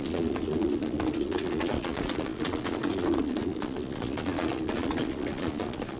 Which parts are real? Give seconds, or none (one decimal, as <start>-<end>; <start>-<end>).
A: none